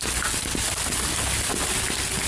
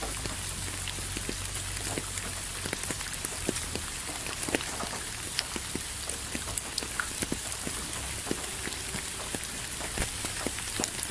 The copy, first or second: second